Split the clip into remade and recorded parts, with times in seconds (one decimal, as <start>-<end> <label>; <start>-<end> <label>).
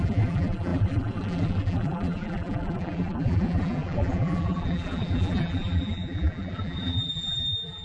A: 0.0-7.8 remade